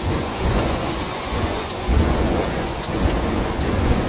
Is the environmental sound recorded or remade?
remade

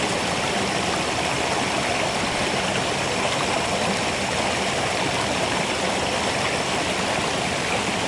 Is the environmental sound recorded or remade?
recorded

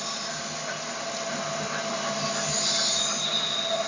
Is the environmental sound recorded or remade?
recorded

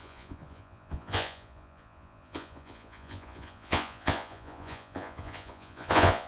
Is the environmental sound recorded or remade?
remade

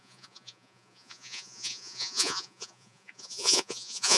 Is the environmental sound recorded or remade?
remade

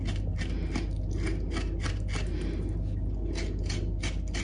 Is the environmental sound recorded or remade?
recorded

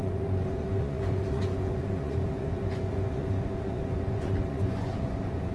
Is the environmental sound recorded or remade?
remade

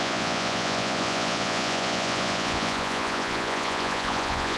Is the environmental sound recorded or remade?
remade